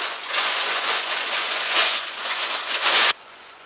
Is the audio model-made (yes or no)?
yes